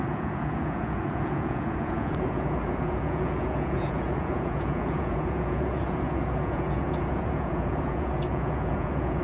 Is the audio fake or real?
fake